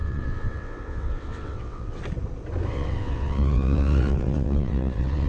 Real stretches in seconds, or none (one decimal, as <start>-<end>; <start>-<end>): 2.0-2.7